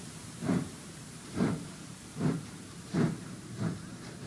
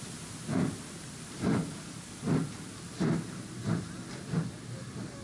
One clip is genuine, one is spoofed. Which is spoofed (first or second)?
first